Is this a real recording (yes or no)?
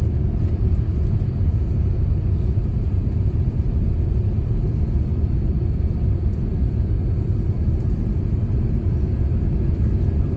yes